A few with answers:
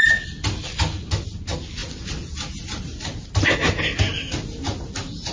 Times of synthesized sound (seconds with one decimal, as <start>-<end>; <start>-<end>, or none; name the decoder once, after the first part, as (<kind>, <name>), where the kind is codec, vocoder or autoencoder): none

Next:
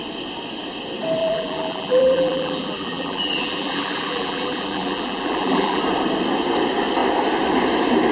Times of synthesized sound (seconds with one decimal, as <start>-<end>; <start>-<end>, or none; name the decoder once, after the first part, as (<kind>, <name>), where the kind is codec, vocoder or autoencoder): 1.2-5.8 (vocoder, BigVGAN v2)

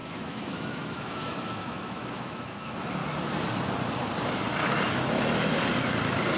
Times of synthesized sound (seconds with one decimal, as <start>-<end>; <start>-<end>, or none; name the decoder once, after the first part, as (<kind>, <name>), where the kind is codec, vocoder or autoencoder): 0.0-3.0 (autoencoder, DAC-VAE)

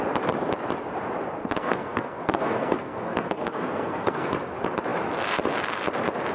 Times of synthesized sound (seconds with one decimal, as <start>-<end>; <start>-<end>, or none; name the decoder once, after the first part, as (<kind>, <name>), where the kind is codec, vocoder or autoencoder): 1.4-4.3 (codec, SNAC)

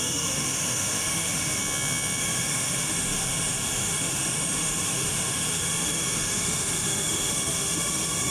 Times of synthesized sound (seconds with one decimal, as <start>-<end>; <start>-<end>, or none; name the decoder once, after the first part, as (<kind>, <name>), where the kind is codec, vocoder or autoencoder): 0.0-1.6 (autoencoder, DAC-VAE); 2.2-8.3

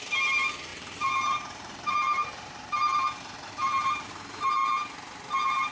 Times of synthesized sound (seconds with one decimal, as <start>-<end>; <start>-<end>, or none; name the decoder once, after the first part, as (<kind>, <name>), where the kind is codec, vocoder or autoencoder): 0.7-4.1 (vocoder, BigVGAN v2)